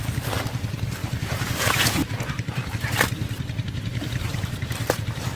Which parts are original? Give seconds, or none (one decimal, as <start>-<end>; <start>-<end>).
0.0-1.0; 1.6-2.0; 2.7-3.9; 4.7-5.4